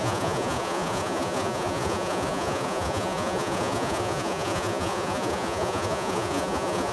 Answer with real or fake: fake